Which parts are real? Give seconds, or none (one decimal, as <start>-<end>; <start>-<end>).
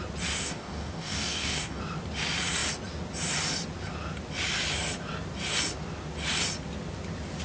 0.0-0.4; 1.8-7.4